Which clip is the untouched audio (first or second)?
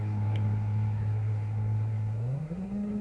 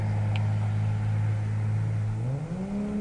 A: second